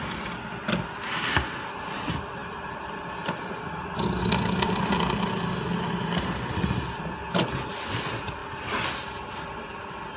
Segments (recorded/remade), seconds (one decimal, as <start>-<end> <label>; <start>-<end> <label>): 0.0-10.2 recorded